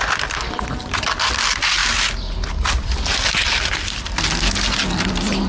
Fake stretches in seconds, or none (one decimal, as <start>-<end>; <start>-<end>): none